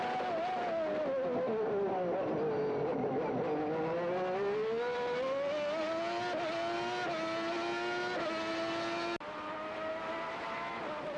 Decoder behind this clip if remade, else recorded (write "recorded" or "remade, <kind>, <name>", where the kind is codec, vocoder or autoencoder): recorded